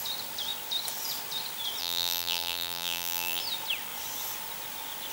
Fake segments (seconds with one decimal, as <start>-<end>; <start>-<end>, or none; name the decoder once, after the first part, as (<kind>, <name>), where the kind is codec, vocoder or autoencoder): 1.8-3.4 (vocoder, BigVGAN v2)